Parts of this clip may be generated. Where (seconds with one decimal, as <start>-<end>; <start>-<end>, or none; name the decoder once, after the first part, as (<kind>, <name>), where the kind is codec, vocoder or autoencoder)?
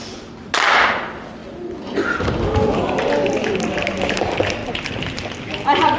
none